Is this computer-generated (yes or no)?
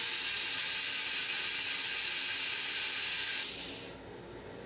no